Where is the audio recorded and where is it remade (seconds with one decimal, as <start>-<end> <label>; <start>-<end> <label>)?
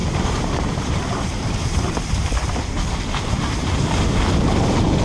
0.0-3.0 remade; 3.0-5.0 recorded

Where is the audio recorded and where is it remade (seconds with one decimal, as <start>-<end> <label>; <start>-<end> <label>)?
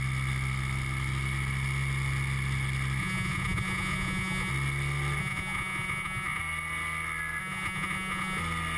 0.0-3.0 recorded; 3.0-4.5 remade; 4.5-5.2 recorded; 5.2-6.4 remade; 6.4-7.4 recorded; 7.4-8.4 remade; 8.4-8.8 recorded